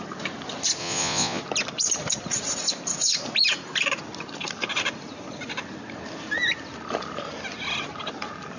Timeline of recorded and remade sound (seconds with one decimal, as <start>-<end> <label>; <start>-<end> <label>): 0.0-0.8 recorded; 0.8-1.4 remade; 1.4-8.6 recorded